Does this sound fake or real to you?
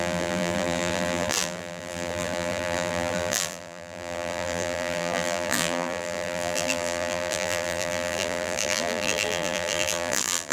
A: fake